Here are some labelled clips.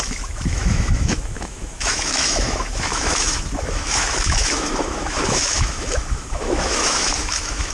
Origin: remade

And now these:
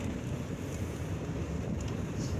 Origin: recorded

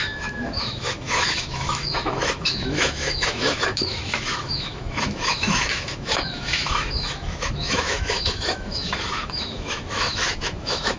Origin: remade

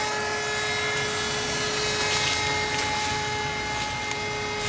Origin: recorded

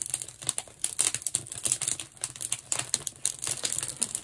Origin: recorded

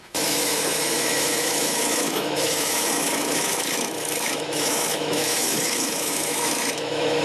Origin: remade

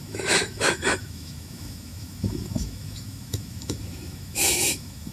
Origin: remade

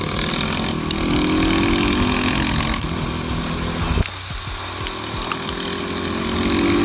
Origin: recorded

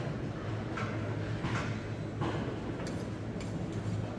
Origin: recorded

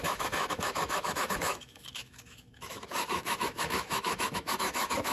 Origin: remade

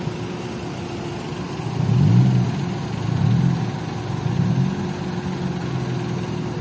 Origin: recorded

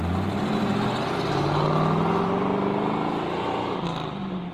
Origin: recorded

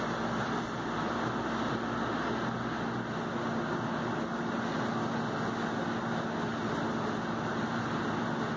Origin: recorded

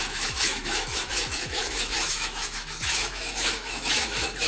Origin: remade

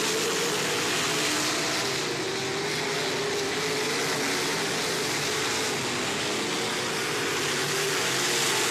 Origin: recorded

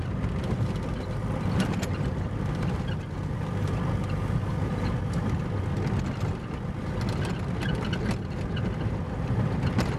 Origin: recorded